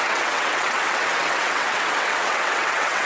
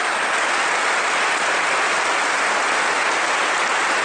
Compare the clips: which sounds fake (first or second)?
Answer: first